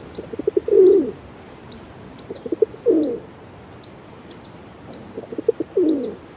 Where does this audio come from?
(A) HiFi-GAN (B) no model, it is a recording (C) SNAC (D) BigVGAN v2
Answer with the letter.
D